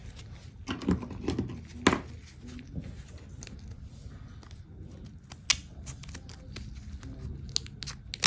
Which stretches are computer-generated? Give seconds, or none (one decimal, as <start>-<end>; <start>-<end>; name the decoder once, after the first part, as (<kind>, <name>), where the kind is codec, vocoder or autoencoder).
none